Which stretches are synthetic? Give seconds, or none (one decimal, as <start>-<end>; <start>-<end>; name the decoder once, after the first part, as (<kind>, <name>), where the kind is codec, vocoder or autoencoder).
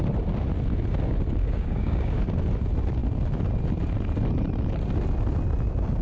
1.4-2.2 (codec, DAC)